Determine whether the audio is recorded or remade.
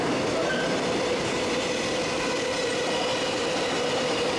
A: recorded